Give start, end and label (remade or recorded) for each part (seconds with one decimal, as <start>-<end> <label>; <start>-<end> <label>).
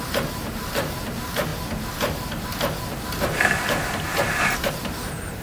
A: 0.0-1.5 remade; 1.5-4.7 recorded; 4.7-5.4 remade